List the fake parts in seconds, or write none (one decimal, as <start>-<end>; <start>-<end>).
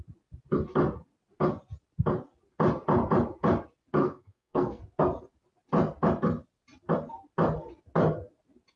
4.0-4.8